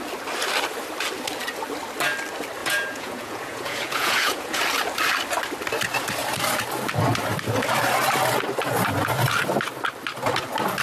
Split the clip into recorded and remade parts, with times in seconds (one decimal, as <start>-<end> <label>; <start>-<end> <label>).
0.0-2.6 recorded; 2.6-4.6 remade; 4.6-10.8 recorded